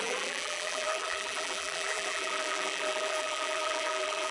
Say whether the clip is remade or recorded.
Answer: remade